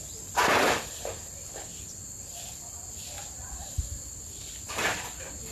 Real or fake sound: fake